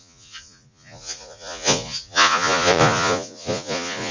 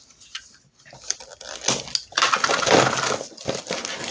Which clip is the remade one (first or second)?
first